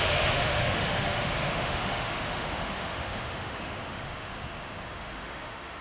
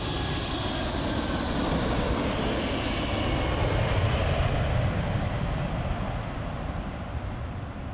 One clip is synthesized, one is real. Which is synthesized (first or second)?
first